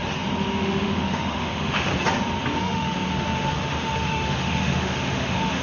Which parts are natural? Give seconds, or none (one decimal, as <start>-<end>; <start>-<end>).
0.0-0.6; 1.9-2.6